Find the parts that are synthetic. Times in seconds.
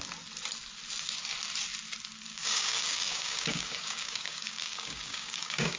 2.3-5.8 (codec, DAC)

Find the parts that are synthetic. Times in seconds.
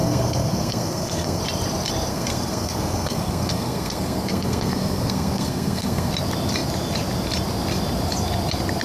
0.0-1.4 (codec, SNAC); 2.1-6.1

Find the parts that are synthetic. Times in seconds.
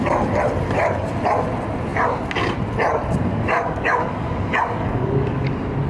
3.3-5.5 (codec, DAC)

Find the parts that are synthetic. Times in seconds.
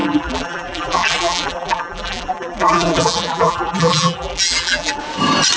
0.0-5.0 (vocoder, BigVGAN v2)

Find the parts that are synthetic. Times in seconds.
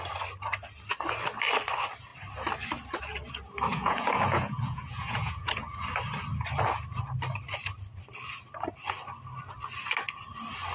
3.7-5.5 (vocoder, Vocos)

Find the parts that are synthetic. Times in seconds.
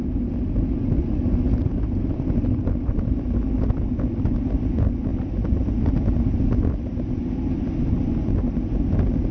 none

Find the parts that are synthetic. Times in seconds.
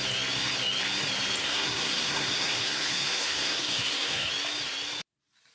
1.4-4.3 (codec, SNAC)